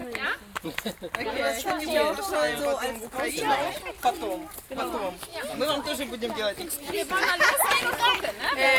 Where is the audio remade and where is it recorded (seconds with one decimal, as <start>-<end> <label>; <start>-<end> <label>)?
0.0-8.8 recorded